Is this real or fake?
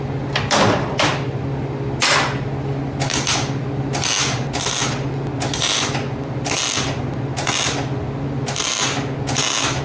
real